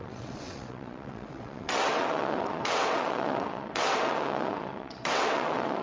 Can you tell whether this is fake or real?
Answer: fake